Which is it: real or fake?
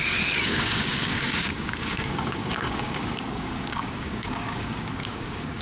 fake